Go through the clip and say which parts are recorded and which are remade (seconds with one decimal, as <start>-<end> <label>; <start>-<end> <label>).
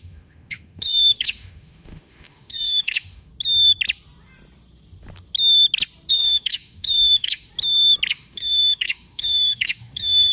0.0-3.3 remade; 3.3-6.1 recorded; 6.1-7.5 remade; 7.5-8.1 recorded; 8.1-10.3 remade